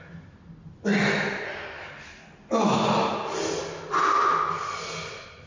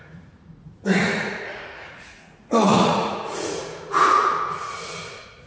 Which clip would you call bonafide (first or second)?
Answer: first